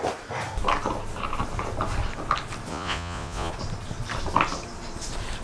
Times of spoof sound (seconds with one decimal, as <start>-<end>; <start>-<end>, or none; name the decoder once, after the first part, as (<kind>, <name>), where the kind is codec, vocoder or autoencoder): 2.7-3.5 (vocoder, Vocos)